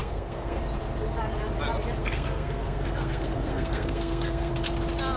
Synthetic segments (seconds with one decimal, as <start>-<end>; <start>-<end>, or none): 0.0-0.6; 2.0-4.5